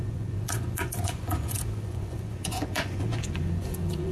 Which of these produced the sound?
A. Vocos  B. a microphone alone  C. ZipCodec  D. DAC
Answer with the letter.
A